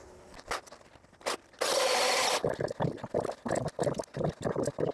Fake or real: real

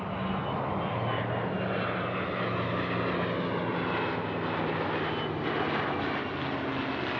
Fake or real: real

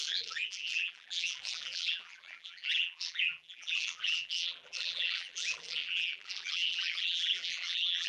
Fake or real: fake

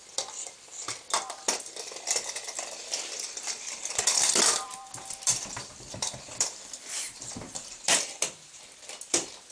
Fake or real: fake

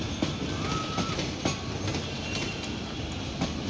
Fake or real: real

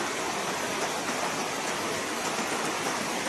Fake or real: real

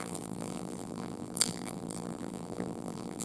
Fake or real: fake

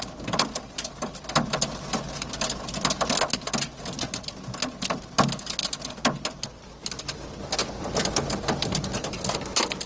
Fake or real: real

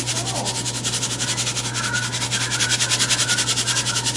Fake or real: real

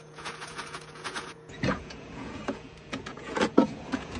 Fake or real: fake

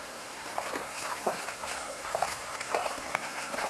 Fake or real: fake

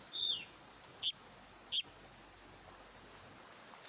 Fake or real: real